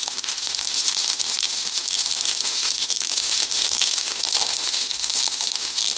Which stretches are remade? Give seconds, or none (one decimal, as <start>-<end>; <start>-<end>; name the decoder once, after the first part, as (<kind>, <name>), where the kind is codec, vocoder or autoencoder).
0.0-6.0 (autoencoder, DAC-VAE)